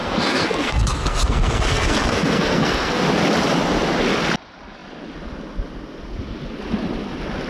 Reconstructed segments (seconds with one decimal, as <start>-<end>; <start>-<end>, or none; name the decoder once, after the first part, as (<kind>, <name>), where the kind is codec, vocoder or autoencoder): 0.0-3.0 (codec, SNAC)